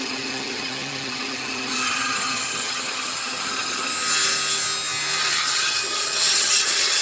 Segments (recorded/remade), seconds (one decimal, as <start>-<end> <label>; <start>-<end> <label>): 0.0-3.9 remade; 3.9-5.2 recorded; 5.2-7.0 remade